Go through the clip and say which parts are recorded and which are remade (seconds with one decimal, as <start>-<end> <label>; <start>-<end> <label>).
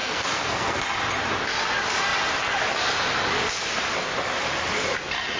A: 0.0-0.8 remade; 0.8-5.4 recorded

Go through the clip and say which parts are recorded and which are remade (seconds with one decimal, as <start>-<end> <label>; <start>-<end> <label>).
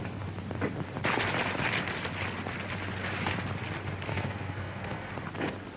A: 0.0-4.1 recorded; 4.1-5.1 remade; 5.1-5.8 recorded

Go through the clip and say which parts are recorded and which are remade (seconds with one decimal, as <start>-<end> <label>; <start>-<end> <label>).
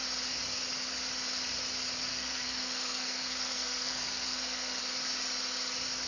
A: 0.0-2.1 recorded; 2.1-4.8 remade; 4.8-6.1 recorded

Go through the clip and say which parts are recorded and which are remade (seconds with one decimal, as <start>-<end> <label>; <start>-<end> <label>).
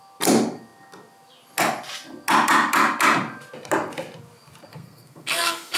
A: 0.0-4.7 recorded; 4.7-5.8 remade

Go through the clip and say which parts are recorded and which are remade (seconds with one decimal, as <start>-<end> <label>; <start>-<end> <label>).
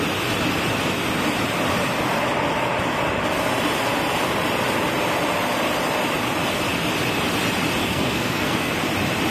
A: 0.0-7.8 recorded; 7.8-8.7 remade; 8.7-9.3 recorded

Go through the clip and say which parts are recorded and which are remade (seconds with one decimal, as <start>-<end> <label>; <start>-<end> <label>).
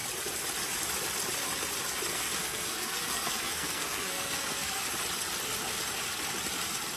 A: 0.0-2.1 recorded; 2.1-4.8 remade; 4.8-7.0 recorded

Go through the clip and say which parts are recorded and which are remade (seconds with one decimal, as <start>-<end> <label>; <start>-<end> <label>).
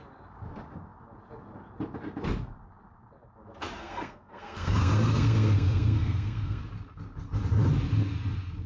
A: 0.0-3.8 recorded; 3.8-6.6 remade; 6.6-8.7 recorded